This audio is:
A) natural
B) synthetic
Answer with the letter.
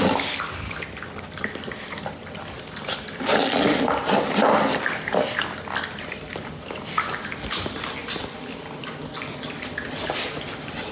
A